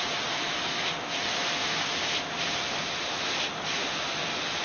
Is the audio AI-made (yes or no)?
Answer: no